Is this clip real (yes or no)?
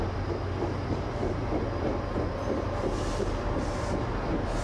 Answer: yes